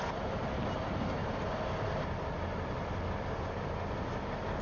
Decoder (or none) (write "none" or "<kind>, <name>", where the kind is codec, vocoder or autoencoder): none